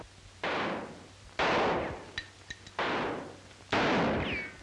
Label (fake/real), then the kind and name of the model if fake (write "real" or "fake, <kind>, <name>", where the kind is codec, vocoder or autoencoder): real